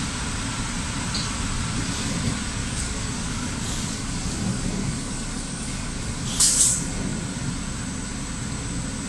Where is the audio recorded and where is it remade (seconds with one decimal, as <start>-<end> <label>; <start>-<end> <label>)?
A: 0.0-2.6 recorded; 2.6-6.6 remade; 6.6-9.1 recorded